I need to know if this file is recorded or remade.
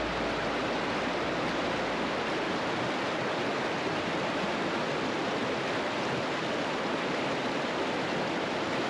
recorded